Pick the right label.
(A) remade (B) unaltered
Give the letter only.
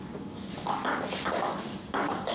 A